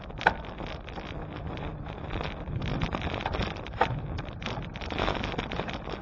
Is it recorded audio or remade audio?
recorded